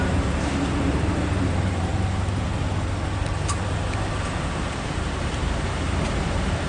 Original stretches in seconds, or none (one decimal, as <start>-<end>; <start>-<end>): 1.9-4.6

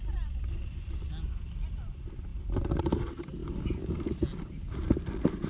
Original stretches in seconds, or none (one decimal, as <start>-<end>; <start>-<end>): 0.0-5.5